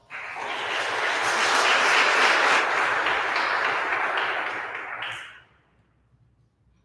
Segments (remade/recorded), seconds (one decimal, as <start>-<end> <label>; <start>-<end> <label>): 0.0-6.8 recorded